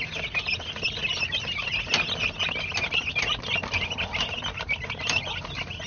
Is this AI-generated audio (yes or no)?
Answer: no